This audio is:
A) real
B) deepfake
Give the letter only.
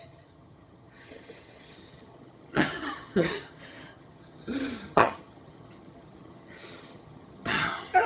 B